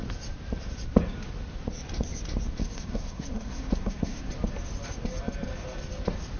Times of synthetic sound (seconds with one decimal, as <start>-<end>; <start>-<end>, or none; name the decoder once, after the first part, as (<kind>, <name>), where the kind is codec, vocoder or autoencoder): 2.6-4.3 (codec, SNAC)